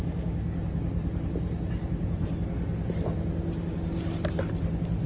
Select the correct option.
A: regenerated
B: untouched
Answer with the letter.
B